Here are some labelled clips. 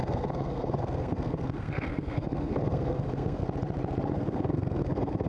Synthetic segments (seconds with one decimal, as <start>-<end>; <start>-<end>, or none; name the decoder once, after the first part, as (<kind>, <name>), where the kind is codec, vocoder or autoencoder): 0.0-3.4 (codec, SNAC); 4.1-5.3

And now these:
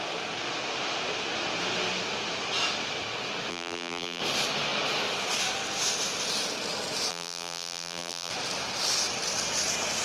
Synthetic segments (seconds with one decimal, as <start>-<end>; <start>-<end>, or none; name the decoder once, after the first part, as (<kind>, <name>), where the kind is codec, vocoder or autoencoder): 3.5-4.2 (vocoder, BigVGAN v2); 7.1-8.3

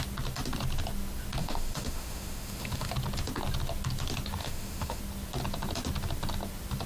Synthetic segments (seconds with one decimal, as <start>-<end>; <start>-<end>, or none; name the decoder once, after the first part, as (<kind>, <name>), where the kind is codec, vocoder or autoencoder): 1.4-2.9 (autoencoder, DAC-VAE); 4.4-5.0

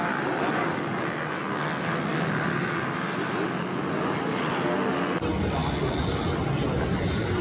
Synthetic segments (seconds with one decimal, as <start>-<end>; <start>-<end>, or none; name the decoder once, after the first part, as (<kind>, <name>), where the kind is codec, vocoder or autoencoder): none

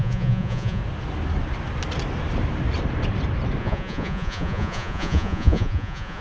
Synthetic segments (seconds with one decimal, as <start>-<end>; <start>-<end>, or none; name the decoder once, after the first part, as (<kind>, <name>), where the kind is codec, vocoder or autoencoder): 0.0-0.8 (vocoder, Vocos); 3.6-6.2

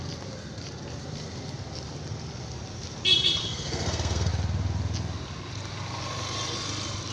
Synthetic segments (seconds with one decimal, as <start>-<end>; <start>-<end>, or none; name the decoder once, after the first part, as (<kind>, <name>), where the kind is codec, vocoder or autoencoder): 3.4-4.3 (codec, SNAC)